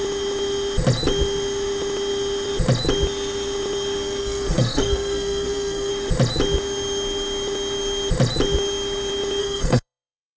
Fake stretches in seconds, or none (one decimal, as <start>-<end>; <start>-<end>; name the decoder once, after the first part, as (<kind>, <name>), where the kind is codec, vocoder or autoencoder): 4.2-5.9 (codec, SNAC); 9.4-10.4